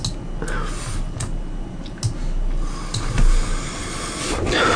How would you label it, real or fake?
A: real